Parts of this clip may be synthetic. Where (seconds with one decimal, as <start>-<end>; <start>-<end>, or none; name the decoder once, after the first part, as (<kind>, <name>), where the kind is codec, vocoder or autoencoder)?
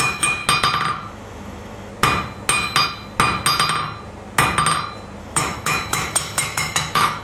0.0-0.4 (autoencoder, DAC-VAE); 0.9-1.9; 5.2-7.2